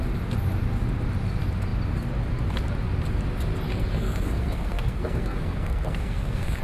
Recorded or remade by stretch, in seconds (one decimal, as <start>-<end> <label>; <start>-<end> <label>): 0.0-3.7 recorded; 3.7-6.6 remade